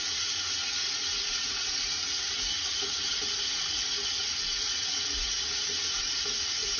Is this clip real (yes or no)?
no